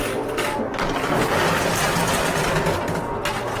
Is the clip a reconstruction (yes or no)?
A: no